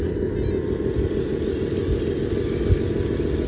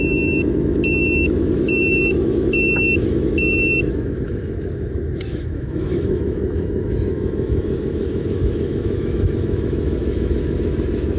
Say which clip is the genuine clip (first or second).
first